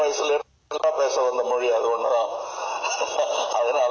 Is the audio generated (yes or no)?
no